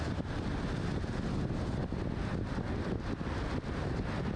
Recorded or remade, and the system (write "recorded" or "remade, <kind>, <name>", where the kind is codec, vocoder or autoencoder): recorded